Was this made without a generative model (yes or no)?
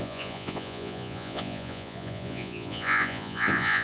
no